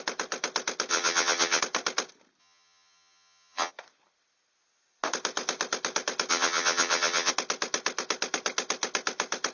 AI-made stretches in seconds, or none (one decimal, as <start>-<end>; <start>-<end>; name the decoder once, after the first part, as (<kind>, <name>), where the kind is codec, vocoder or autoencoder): 0.9-1.6 (vocoder, HiFi-GAN); 2.4-3.7; 6.3-7.3